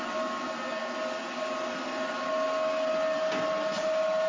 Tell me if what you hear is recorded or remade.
recorded